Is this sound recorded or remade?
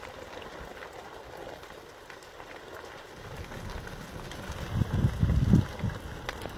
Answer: recorded